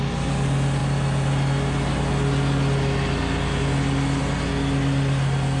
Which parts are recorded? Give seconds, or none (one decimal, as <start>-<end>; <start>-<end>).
0.0-5.6